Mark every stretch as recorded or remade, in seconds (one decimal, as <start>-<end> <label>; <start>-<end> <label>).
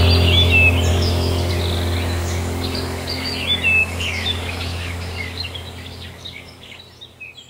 0.0-0.9 recorded; 0.9-1.5 remade; 1.5-2.2 recorded; 2.2-3.3 remade; 3.3-3.8 recorded; 3.8-6.8 remade; 6.8-7.5 recorded